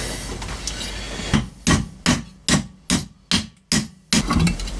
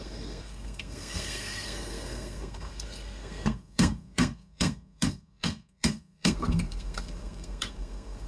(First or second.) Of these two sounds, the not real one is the second